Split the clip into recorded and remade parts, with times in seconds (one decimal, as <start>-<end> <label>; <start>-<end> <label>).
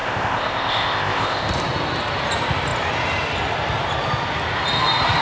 0.0-1.5 remade; 1.5-5.2 recorded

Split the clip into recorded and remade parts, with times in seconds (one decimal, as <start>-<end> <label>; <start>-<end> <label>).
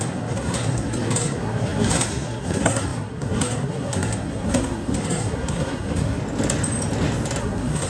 0.0-6.2 remade; 6.2-7.4 recorded; 7.4-7.9 remade